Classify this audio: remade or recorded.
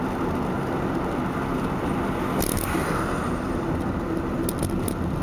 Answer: recorded